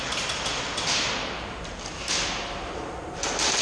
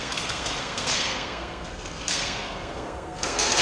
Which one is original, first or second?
first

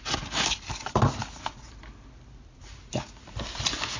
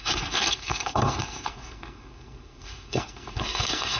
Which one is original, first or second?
first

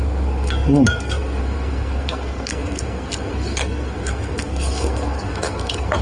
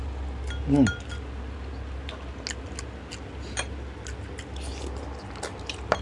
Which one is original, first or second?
second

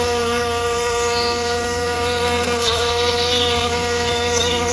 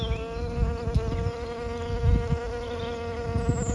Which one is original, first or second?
second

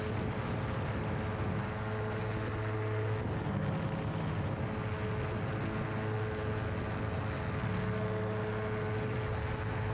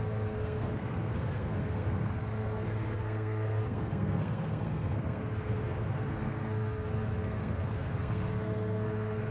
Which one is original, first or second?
first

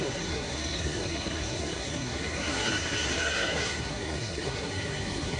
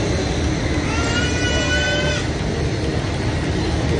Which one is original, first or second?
second